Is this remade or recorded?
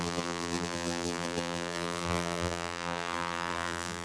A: remade